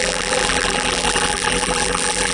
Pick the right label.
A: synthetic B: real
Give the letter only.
A